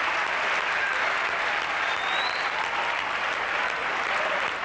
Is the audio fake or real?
real